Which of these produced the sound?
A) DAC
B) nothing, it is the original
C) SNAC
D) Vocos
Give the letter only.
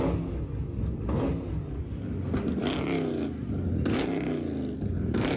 B